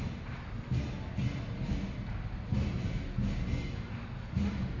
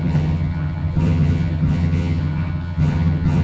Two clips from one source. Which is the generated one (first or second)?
second